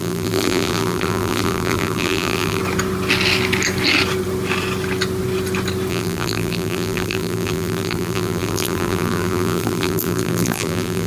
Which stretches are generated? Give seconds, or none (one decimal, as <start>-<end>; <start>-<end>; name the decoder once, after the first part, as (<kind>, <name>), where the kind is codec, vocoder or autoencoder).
0.0-2.6 (vocoder, BigVGAN v2); 5.9-11.1